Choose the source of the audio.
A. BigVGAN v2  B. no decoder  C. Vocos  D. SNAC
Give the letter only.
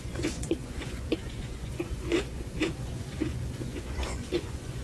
C